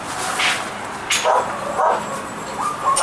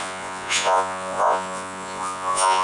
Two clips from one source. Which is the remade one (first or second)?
second